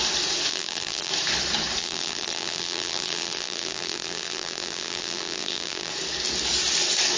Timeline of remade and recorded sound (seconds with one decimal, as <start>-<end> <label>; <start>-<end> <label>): 0.0-0.5 recorded; 0.5-1.1 remade; 1.1-1.8 recorded; 1.8-5.9 remade; 5.9-7.2 recorded